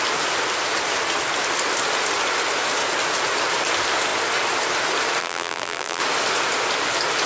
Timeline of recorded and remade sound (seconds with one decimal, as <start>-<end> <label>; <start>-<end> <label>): 0.0-5.2 recorded; 5.2-6.0 remade; 6.0-7.3 recorded